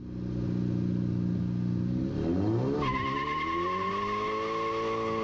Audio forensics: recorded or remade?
recorded